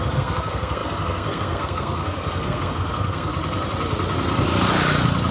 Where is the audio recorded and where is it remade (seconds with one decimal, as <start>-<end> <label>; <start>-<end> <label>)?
0.0-3.3 remade; 3.3-5.3 recorded

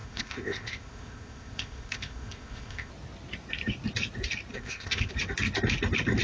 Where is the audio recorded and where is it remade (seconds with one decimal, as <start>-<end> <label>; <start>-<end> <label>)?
0.0-2.9 remade; 2.9-4.5 recorded; 4.5-5.1 remade; 5.1-6.2 recorded